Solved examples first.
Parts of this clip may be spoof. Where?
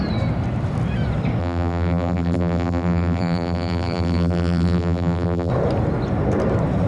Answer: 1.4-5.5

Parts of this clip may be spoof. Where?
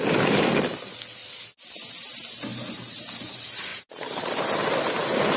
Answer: 2.5-3.0; 3.7-5.4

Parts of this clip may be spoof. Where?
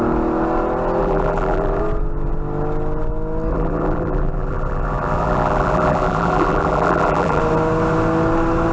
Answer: 1.0-1.8; 3.5-7.4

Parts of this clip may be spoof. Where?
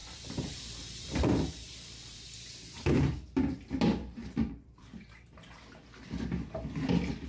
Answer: 0.0-3.0; 4.0-5.6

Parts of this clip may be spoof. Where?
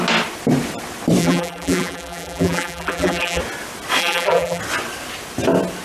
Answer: 1.2-3.4; 4.0-4.6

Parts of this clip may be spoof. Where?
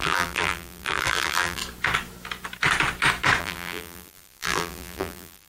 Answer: 0.0-1.6; 3.4-5.5